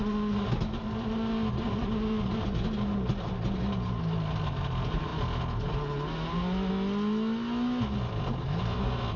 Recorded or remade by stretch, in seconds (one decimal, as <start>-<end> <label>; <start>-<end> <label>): 0.0-9.2 recorded

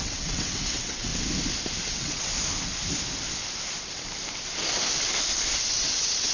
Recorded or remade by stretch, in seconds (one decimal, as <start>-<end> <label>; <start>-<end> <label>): 0.0-1.1 remade; 1.1-1.9 recorded; 1.9-2.3 remade; 2.3-5.7 recorded; 5.7-6.3 remade

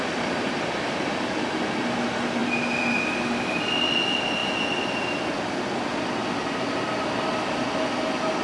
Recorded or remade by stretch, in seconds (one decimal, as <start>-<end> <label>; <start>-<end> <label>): 0.0-8.4 recorded

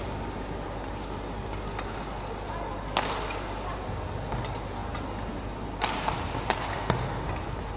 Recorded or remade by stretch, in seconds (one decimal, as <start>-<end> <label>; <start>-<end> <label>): 0.0-7.8 recorded

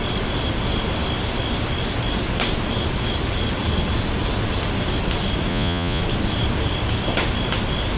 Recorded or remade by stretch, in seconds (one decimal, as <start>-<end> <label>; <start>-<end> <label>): 0.0-5.5 recorded; 5.5-6.0 remade; 6.0-8.0 recorded

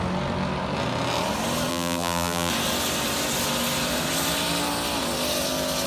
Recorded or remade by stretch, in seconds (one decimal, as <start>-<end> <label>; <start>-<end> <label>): 0.0-1.7 recorded; 1.7-2.5 remade; 2.5-5.9 recorded